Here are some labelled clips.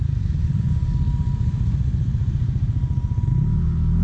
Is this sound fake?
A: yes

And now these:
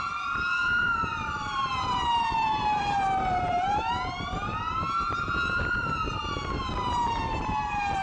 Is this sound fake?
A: yes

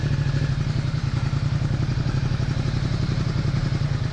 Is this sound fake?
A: yes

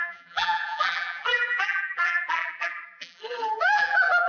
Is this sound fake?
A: yes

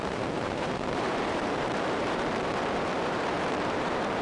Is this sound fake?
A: yes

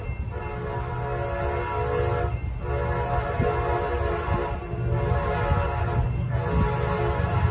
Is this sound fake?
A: no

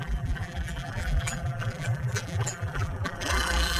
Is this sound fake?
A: yes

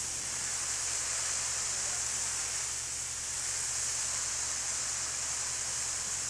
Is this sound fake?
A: no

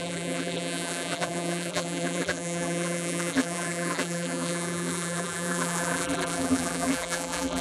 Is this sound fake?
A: yes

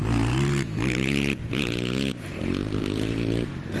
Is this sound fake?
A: yes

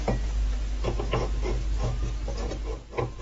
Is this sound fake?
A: no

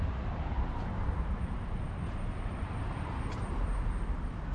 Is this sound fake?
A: yes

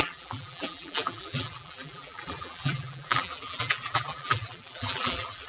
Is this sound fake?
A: yes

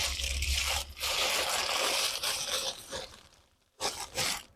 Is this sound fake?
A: yes